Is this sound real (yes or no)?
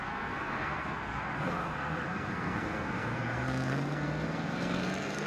no